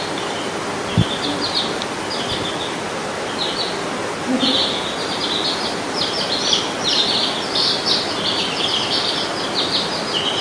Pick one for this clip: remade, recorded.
recorded